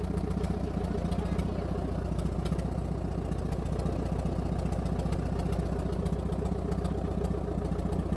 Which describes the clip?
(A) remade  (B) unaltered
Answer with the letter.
B